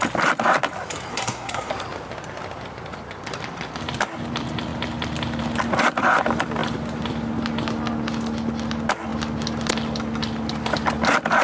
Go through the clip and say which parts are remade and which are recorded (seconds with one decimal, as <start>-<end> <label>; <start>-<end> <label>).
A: 0.0-1.1 recorded; 1.1-1.7 remade; 1.7-11.4 recorded

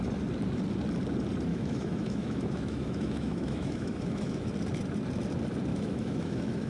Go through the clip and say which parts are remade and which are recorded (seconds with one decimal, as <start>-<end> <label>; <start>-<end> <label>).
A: 0.0-1.5 recorded; 1.5-4.5 remade; 4.5-5.7 recorded; 5.7-6.7 remade

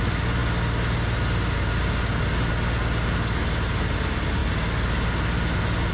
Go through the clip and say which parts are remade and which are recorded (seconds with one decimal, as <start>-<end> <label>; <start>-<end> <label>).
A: 0.0-5.9 recorded